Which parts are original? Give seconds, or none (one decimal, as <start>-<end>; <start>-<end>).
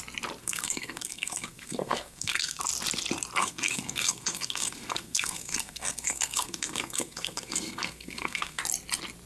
0.0-0.4; 2.6-3.4; 8.6-9.3